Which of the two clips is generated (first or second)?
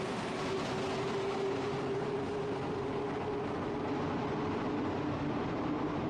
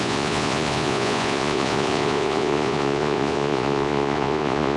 second